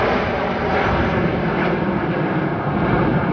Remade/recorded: recorded